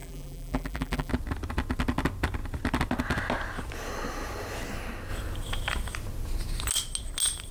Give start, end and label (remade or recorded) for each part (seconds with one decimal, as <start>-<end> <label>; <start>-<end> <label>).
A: 0.0-1.1 remade; 1.1-7.5 recorded